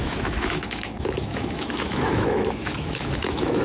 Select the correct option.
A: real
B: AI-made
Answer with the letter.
B